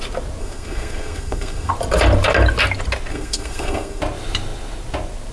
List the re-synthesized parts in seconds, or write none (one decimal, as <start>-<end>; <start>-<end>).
0.4-1.7; 3.1-4.0